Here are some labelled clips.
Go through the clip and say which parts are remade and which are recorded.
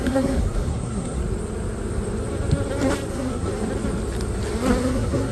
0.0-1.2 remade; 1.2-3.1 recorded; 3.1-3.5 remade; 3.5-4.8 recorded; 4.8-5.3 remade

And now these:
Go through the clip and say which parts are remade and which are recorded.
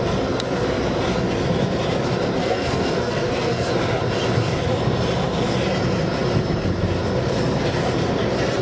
0.0-2.4 recorded; 2.4-3.7 remade; 3.7-8.6 recorded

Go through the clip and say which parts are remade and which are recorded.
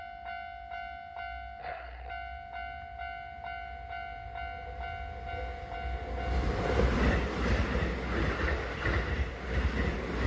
0.0-1.6 recorded; 1.6-2.1 remade; 2.1-10.3 recorded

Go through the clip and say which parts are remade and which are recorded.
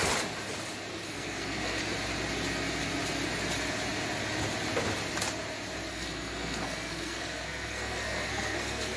0.0-0.9 recorded; 0.9-1.8 remade; 1.8-5.9 recorded; 5.9-9.0 remade